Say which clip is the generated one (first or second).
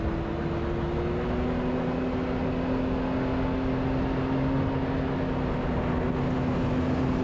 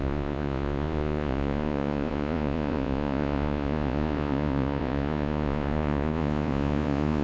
second